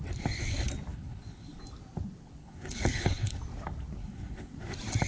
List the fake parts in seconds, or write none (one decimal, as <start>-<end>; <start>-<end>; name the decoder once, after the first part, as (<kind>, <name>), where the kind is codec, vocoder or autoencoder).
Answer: 0.9-1.6 (codec, HILCodec); 2.4-3.4; 4.0-4.5